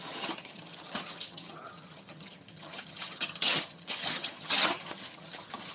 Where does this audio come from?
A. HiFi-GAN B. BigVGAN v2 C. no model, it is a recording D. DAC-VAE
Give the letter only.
A